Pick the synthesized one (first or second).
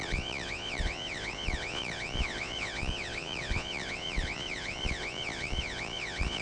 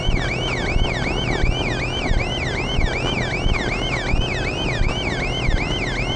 first